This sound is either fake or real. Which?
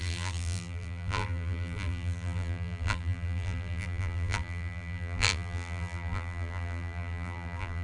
fake